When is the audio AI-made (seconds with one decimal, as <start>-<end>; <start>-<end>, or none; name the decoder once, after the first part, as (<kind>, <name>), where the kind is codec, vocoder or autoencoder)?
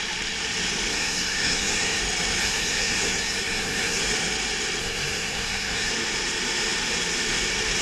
0.9-2.0 (codec, SNAC); 2.4-4.0; 4.8-5.9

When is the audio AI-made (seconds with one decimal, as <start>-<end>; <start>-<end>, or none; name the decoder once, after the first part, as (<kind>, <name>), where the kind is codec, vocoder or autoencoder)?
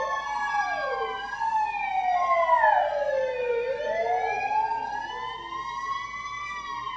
none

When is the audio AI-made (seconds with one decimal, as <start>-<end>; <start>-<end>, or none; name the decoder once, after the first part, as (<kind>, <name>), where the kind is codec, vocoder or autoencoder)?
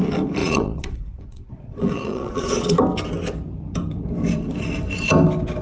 0.4-2.8 (vocoder, Vocos)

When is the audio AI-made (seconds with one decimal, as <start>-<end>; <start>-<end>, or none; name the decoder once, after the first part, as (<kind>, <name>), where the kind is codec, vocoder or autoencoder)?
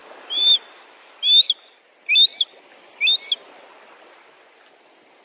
0.0-1.1 (vocoder, BigVGAN v2)